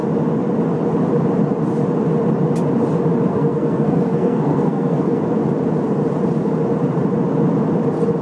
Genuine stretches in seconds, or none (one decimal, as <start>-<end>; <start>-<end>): 0.0-3.3; 5.2-8.2

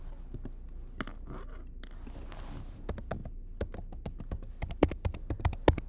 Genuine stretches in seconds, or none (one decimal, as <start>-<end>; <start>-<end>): 0.0-5.9

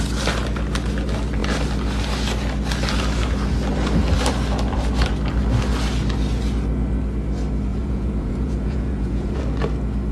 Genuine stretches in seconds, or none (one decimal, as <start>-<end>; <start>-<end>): 0.0-7.7; 9.4-10.1

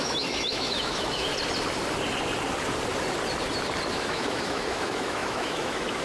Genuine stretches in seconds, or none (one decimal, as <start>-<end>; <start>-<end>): 1.3-3.9

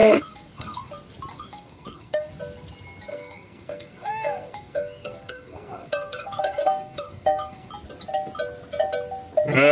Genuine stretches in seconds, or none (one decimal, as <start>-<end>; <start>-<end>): 0.9-1.3; 2.3-3.1; 7.7-9.7